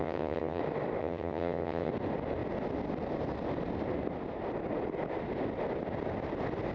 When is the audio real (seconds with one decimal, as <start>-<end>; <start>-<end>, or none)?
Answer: 0.6-1.0; 1.9-6.7